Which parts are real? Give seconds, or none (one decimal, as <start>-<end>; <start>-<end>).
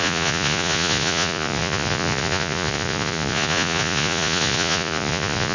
none